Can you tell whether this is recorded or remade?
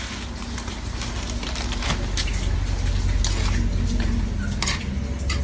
recorded